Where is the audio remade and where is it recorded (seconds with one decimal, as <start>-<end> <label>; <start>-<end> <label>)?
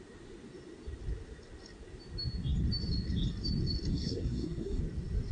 0.0-3.9 recorded; 3.9-4.8 remade; 4.8-5.3 recorded